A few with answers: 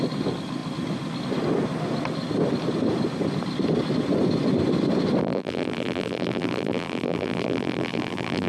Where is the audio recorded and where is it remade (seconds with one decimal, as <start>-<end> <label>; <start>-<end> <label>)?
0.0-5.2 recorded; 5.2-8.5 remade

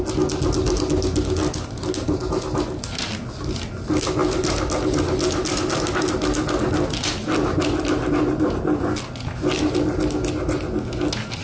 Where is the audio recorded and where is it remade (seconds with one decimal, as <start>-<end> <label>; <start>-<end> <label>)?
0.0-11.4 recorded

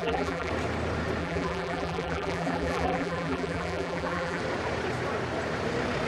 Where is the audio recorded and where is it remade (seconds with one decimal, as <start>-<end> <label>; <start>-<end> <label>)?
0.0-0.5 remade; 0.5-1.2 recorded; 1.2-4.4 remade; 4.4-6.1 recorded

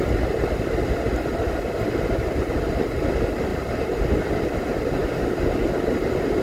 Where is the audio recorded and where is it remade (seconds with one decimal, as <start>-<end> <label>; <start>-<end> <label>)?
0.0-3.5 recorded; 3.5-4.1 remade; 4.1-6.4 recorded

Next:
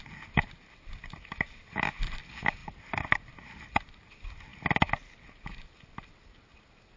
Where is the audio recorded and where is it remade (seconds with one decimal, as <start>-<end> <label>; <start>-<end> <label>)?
0.0-2.6 recorded; 2.6-3.9 remade; 3.9-7.0 recorded